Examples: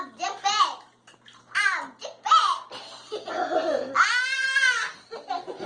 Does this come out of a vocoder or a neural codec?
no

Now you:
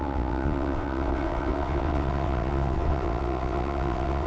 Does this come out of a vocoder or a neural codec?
yes